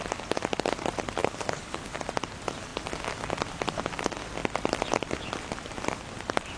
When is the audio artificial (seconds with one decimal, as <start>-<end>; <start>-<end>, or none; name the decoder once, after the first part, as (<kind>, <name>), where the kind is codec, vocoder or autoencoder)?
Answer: 1.2-1.9 (codec, HILCodec)